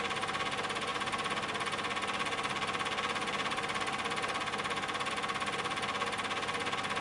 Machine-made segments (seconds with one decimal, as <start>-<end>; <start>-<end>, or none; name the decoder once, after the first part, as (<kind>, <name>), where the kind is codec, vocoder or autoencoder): none